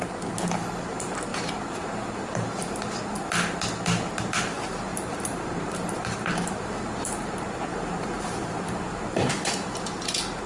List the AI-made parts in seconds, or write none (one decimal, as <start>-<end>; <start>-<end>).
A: 4.9-6.7; 7.7-9.3